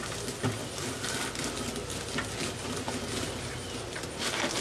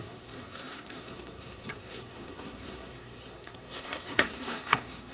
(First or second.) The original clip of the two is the first